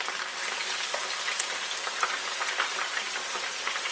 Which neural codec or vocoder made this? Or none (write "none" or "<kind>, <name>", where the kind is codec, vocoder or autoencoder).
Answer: none